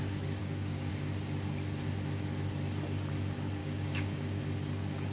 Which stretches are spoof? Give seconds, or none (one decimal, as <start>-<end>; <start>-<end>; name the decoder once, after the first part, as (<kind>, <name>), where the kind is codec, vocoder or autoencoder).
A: 0.4-0.9 (codec, DAC); 3.6-4.4